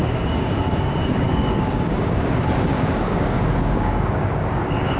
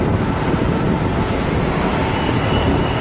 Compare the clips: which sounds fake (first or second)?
first